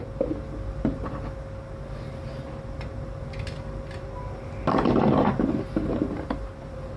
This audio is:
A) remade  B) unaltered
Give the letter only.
B